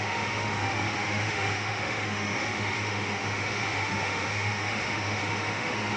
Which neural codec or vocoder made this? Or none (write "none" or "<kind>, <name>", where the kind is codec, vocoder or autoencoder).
autoencoder, DAC-VAE